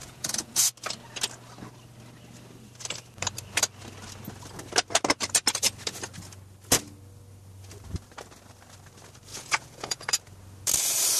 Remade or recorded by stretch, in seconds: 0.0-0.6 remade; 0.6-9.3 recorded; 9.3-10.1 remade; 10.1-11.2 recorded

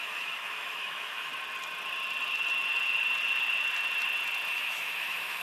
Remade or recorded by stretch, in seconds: 0.0-1.3 remade; 1.3-4.5 recorded; 4.5-5.4 remade